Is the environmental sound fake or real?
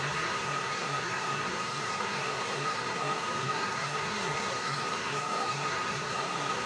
fake